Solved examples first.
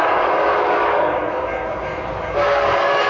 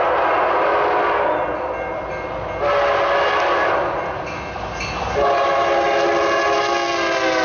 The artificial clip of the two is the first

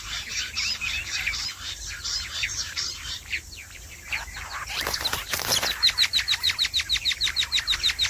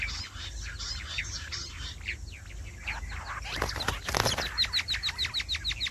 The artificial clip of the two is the first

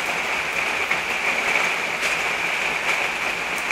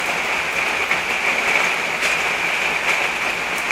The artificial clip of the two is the first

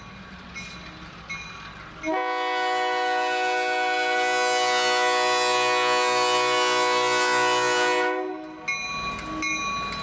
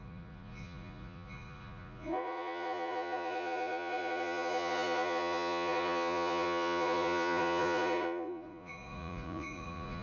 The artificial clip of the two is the second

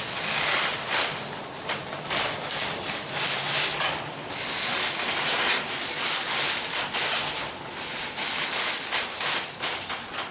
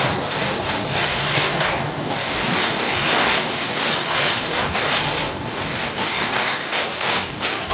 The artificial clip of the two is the second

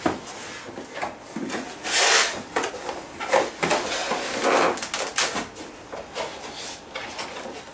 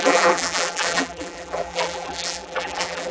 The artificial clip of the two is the second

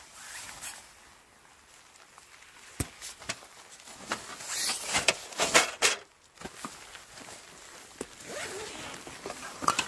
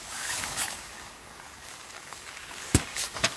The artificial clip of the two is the second